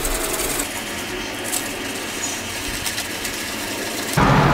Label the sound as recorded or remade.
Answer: recorded